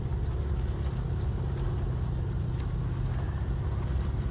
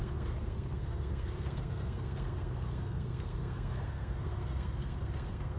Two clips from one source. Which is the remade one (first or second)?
second